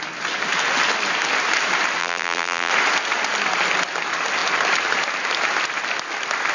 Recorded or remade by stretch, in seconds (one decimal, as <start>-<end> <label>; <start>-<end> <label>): 0.0-2.0 recorded; 2.0-2.7 remade; 2.7-6.5 recorded